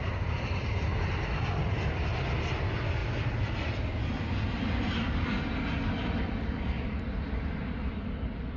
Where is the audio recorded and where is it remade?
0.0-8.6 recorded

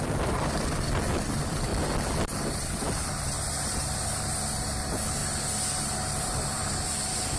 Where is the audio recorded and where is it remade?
0.0-1.7 remade; 1.7-4.8 recorded; 4.8-5.2 remade; 5.2-6.2 recorded; 6.2-7.4 remade